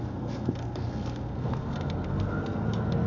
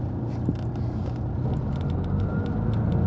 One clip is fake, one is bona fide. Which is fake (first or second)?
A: first